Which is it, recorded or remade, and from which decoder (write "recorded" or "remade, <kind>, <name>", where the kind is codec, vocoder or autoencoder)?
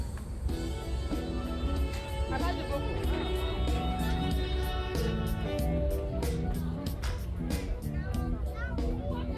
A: recorded